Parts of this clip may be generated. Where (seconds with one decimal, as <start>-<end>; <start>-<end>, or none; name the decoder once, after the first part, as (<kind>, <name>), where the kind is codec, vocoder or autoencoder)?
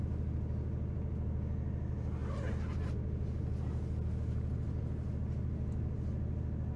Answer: none